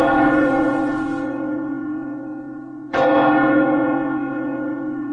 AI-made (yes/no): yes